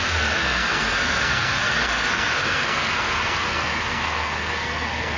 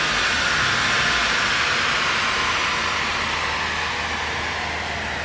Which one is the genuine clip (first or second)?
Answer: second